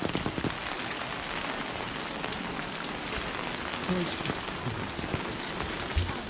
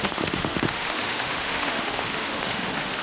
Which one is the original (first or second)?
first